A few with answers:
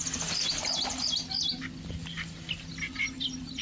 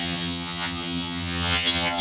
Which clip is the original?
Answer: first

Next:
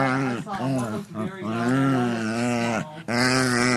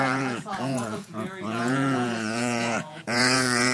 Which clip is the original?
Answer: first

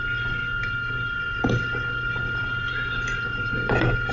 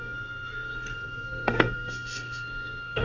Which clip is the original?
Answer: first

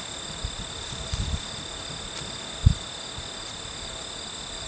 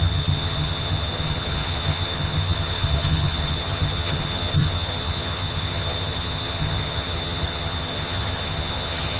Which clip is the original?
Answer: first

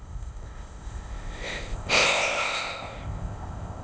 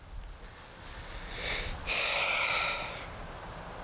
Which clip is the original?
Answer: second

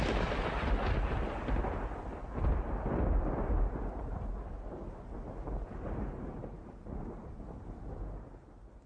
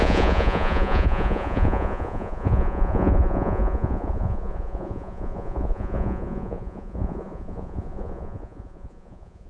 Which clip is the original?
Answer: first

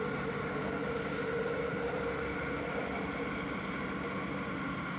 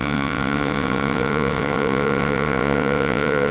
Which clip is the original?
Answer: first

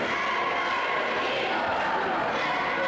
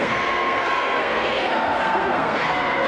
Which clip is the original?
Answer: first